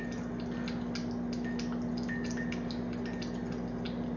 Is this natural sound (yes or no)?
yes